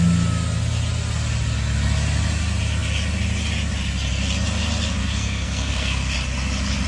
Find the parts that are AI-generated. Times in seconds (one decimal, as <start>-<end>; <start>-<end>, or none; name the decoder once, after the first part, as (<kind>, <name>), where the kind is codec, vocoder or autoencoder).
5.0-6.1 (codec, SNAC)